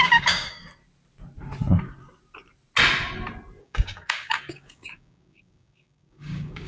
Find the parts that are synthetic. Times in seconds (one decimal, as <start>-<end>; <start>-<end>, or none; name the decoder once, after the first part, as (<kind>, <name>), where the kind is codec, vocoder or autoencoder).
0.0-0.6 (codec, DAC); 3.6-6.7